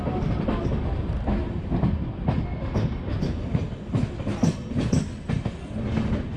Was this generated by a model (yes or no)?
no